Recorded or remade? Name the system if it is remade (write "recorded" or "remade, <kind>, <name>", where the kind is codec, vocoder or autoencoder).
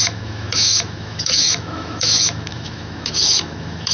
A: remade, autoencoder, DAC-VAE